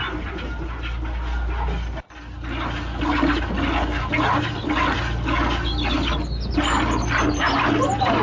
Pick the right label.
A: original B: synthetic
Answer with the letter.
A